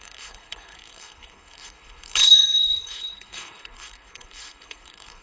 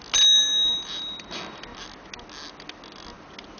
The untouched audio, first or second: second